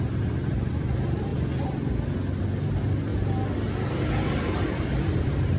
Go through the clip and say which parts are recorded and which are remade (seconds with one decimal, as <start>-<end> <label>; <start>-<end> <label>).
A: 0.0-1.3 remade; 1.3-2.7 recorded; 2.7-3.1 remade; 3.1-4.1 recorded; 4.1-5.6 remade